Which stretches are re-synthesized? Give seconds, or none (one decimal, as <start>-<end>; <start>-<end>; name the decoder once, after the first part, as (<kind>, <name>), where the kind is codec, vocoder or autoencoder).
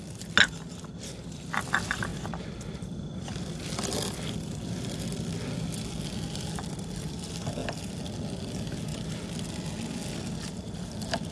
none